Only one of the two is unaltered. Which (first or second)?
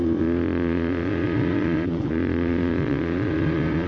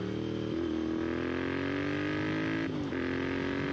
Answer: second